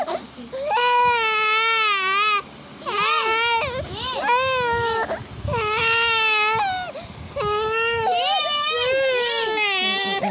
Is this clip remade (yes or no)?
no